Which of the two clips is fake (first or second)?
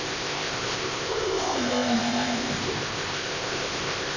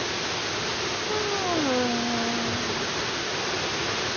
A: first